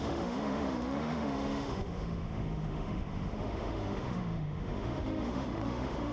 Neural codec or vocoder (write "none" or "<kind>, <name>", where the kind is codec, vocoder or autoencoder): autoencoder, DAC-VAE